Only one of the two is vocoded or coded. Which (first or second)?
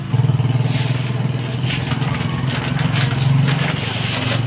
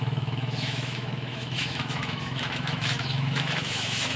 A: second